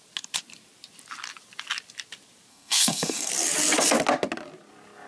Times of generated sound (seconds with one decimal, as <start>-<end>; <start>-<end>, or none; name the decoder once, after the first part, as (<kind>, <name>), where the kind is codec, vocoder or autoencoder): 2.5-3.3 (codec, SNAC)